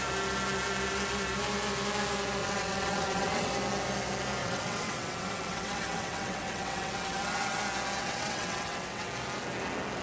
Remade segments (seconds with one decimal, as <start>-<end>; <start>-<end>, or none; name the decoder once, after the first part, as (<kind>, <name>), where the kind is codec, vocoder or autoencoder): 2.4-3.5 (vocoder, WaveNeXt); 4.4-7.6; 8.0-9.1